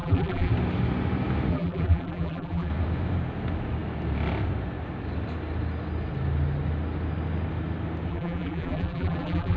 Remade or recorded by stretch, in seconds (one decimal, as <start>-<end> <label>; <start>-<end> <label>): 0.0-0.5 remade; 0.5-1.5 recorded; 1.5-2.7 remade; 2.7-8.1 recorded; 8.1-9.6 remade